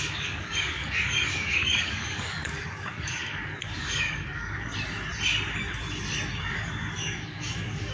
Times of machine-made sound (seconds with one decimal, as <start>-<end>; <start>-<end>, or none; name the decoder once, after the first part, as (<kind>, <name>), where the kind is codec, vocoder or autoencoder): 0.0-4.7 (codec, DAC); 6.4-7.9